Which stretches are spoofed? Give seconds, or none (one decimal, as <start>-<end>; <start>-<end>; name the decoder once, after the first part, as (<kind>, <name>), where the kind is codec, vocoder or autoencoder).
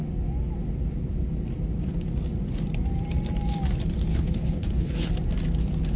4.1-5.1 (codec, HILCodec)